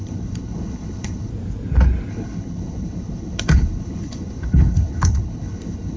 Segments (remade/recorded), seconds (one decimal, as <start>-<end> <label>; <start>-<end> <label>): 0.0-1.3 remade; 1.3-2.1 recorded; 2.1-6.0 remade